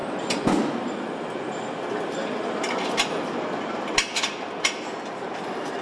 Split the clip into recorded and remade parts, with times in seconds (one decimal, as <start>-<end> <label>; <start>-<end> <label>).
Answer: 0.0-5.8 recorded